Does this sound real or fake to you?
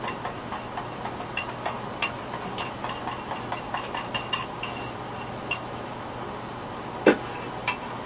real